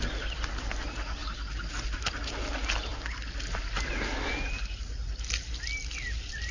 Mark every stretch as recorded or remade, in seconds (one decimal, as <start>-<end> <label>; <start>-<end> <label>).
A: 0.0-6.5 recorded